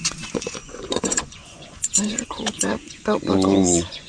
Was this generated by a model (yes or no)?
yes